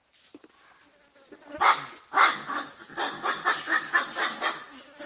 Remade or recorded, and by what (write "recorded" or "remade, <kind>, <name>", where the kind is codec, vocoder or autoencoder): recorded